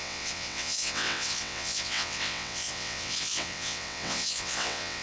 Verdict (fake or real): fake